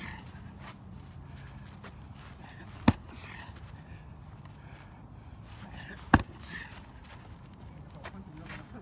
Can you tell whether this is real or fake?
real